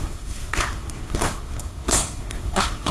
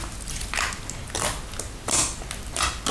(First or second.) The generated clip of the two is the first